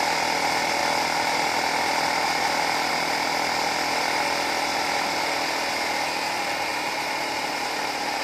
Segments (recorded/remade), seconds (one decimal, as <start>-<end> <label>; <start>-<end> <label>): 0.0-6.7 recorded; 6.7-8.2 remade